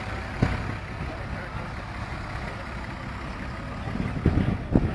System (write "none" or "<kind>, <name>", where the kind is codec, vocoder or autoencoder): none